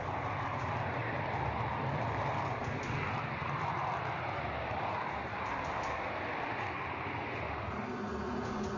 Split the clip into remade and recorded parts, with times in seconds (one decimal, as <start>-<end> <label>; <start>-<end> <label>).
0.0-8.8 recorded